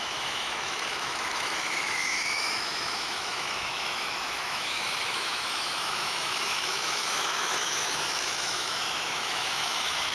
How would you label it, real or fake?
fake